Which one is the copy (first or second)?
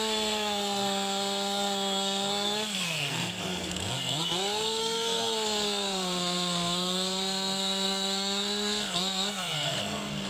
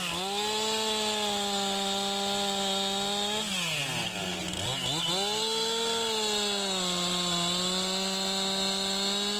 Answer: first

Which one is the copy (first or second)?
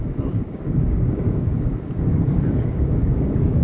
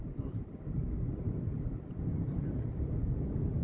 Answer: first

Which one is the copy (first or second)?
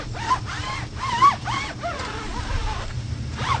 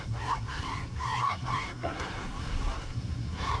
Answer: second